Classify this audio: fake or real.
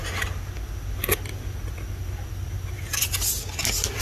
real